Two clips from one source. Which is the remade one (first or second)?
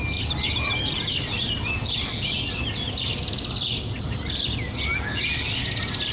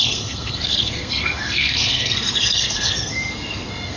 second